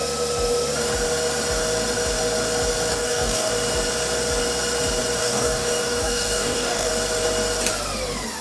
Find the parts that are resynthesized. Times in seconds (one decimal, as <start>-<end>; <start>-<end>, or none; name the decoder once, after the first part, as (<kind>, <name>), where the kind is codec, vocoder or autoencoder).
2.9-3.5 (codec, DAC); 5.2-6.9